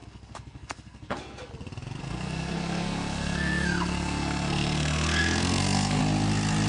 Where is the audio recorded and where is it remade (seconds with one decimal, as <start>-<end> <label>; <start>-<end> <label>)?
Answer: 0.0-1.5 remade; 1.5-2.0 recorded; 2.0-6.0 remade; 6.0-6.7 recorded